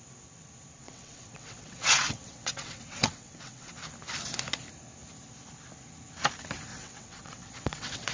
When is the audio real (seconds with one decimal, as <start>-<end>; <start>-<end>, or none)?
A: 0.0-0.8; 3.7-6.7